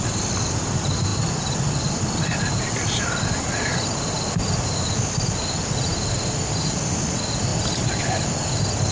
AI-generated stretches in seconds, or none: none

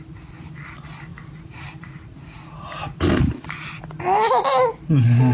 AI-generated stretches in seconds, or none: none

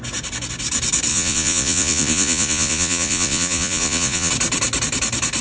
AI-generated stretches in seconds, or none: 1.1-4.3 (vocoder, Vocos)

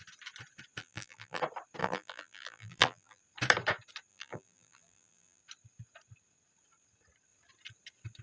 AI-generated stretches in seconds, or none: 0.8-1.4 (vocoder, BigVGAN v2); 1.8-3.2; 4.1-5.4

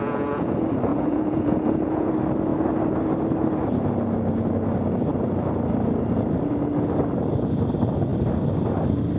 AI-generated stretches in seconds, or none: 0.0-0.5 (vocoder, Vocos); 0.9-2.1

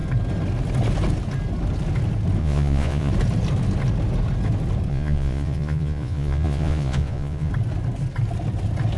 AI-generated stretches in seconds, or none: 2.4-3.1 (vocoder, Vocos); 4.9-7.5